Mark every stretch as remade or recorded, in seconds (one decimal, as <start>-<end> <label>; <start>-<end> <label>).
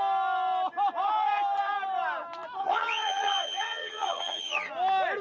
0.0-2.6 recorded; 2.6-4.7 remade; 4.7-5.2 recorded